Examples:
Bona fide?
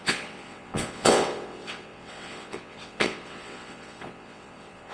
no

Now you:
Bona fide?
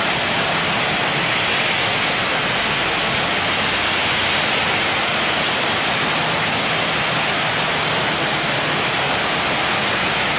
yes